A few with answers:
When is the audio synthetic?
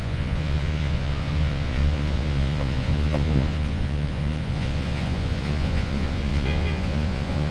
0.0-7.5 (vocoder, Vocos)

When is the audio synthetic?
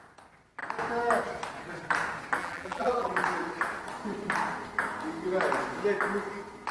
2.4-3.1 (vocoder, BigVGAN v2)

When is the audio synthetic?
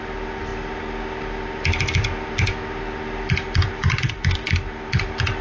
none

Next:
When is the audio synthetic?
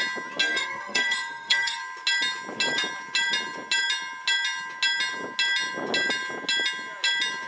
0.4-1.8 (codec, SNAC)